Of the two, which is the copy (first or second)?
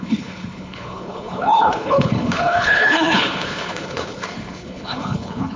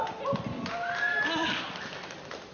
first